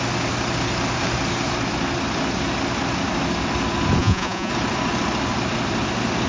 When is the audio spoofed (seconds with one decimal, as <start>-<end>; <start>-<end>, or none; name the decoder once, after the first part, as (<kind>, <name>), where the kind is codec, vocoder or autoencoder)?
4.0-4.5 (vocoder, Vocos)